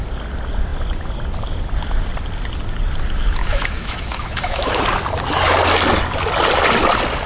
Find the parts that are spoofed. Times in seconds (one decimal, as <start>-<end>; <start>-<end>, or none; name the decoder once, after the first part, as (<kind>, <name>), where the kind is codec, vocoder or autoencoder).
3.4-4.8 (autoencoder, DAC-VAE)